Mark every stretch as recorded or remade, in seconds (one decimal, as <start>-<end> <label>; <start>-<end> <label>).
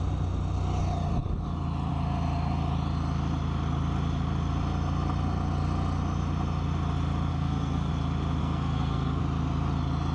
0.0-7.3 recorded; 7.3-7.9 remade; 7.9-8.4 recorded; 8.4-9.2 remade; 9.2-10.1 recorded